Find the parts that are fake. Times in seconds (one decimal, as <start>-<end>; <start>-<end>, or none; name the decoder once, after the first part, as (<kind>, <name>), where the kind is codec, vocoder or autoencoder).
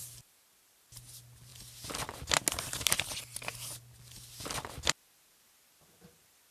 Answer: 0.0-0.9 (vocoder, BigVGAN v2)